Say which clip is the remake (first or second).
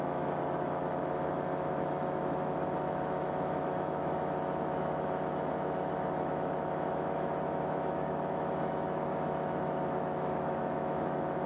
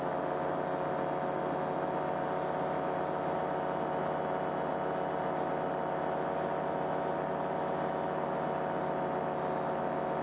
first